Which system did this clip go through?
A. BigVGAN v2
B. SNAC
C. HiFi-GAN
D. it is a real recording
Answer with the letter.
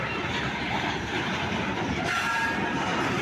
A